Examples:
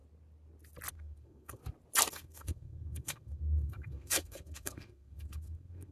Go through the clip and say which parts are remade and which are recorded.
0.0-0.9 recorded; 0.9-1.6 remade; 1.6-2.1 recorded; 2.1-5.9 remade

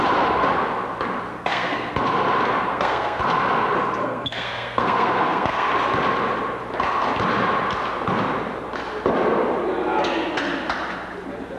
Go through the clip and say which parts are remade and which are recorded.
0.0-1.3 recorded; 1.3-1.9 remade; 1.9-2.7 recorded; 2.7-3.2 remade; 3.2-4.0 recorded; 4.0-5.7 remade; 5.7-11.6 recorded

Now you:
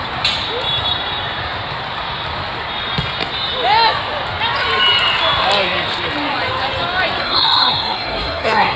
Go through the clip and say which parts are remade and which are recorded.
0.0-7.2 recorded; 7.2-8.8 remade